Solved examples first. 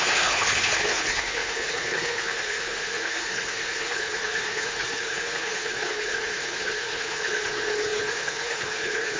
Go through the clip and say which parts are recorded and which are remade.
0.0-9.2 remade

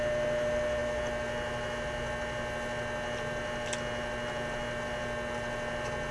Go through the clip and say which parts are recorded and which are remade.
0.0-6.1 recorded

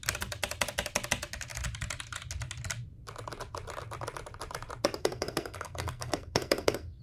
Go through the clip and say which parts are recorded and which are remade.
0.0-5.0 recorded; 5.0-7.0 remade

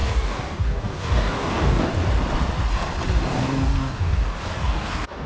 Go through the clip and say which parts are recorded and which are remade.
0.0-1.9 remade; 1.9-3.3 recorded; 3.3-5.3 remade

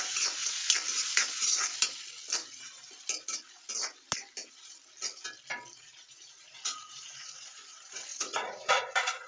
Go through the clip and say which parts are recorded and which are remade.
0.0-0.6 remade; 0.6-5.8 recorded; 5.8-9.3 remade

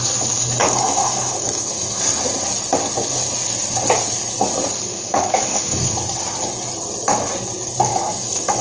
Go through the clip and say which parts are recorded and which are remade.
0.0-0.6 recorded; 0.6-2.1 remade; 2.1-4.9 recorded; 4.9-5.8 remade; 5.8-7.9 recorded; 7.9-8.6 remade